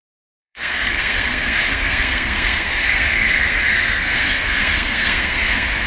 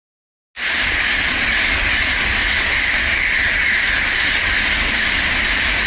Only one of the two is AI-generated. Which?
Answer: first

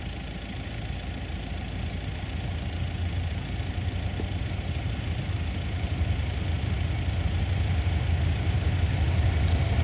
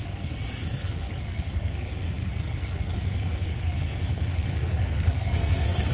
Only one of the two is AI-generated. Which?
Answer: second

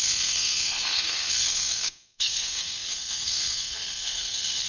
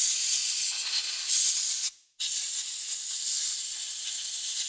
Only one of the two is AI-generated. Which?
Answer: first